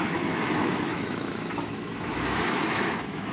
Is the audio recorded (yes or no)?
no